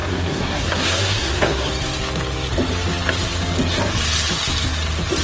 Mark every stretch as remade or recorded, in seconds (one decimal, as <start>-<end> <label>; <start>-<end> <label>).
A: 0.0-1.7 remade; 1.7-5.2 recorded